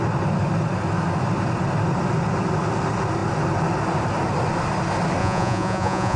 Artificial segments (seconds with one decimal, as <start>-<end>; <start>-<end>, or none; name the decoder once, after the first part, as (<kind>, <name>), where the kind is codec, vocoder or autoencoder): 5.2-6.2 (vocoder, Vocos)